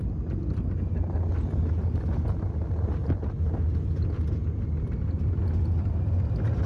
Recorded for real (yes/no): yes